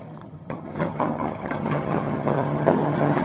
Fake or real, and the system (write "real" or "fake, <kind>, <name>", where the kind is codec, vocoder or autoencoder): fake, vocoder, HiFi-GAN